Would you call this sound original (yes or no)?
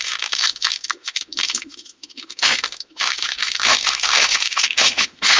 no